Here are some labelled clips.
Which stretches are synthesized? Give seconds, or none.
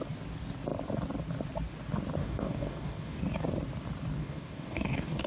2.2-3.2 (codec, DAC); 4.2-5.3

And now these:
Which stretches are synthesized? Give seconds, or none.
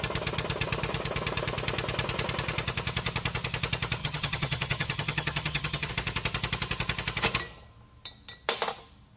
4.0-5.9 (vocoder, HiFi-GAN)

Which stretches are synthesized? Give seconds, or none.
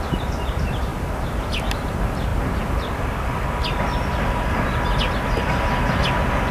none